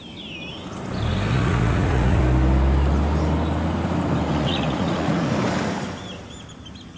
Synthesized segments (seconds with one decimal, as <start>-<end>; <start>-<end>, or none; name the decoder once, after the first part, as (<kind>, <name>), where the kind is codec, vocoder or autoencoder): 1.3-2.2 (vocoder, Vocos); 4.3-5.3